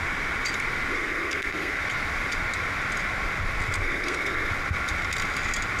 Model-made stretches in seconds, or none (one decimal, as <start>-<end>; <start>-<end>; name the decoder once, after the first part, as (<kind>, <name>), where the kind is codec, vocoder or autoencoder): 0.9-1.8 (codec, SNAC); 3.8-4.5